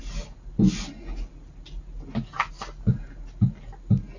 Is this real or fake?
real